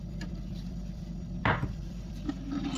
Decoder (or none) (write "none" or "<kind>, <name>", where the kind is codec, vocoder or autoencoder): vocoder, BigVGAN v2